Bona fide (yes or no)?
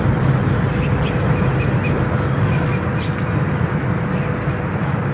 yes